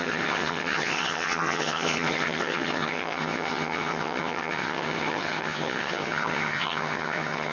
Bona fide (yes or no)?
no